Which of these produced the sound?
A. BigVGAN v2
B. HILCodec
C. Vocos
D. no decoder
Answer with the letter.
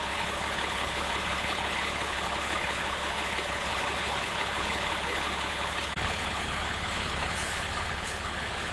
B